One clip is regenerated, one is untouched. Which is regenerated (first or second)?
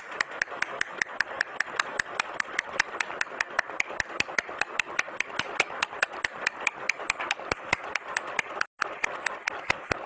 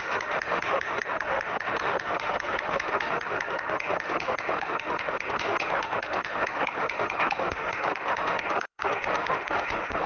second